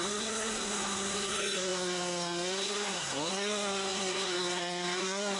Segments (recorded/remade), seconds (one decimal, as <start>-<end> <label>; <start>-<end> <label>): 0.0-5.4 remade